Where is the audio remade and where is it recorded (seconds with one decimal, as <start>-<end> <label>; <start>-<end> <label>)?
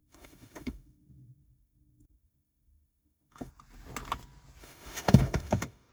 0.0-3.5 remade; 3.5-4.6 recorded; 4.6-5.9 remade